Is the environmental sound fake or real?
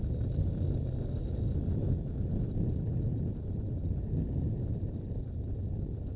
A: real